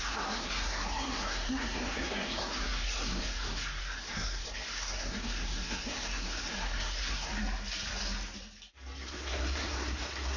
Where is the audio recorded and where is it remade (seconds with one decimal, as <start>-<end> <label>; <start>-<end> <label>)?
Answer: 0.0-7.3 remade; 7.3-9.0 recorded; 9.0-10.4 remade